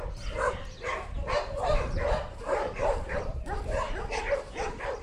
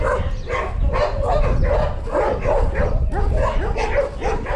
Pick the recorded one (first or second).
second